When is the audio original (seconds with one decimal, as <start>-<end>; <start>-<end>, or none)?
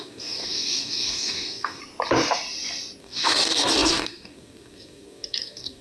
1.8-3.0